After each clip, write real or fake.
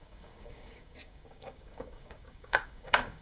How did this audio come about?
fake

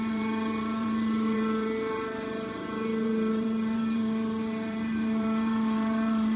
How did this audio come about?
fake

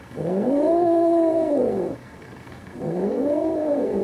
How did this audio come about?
fake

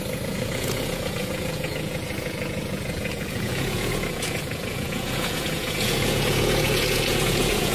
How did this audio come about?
fake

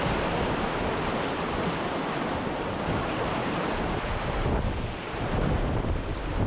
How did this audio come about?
real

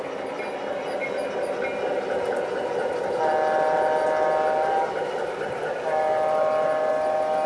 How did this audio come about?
real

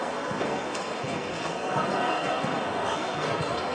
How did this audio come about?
fake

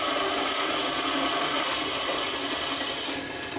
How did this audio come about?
real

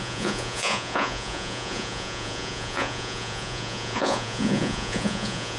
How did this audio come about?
fake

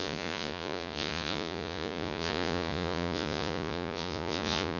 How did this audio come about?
fake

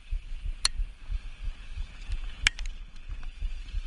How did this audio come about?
real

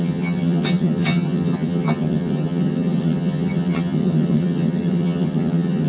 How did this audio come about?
fake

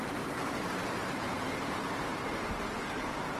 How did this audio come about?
fake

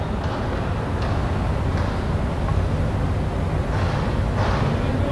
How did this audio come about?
real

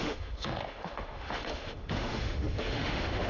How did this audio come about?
fake